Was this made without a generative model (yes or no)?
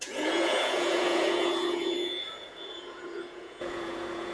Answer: no